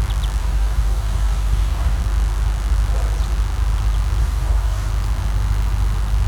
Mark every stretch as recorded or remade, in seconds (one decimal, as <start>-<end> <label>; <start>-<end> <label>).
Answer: 0.0-0.4 recorded; 0.4-2.0 remade; 2.0-4.2 recorded; 4.2-4.9 remade; 4.9-6.3 recorded